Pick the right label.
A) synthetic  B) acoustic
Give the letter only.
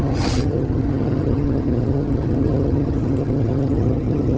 A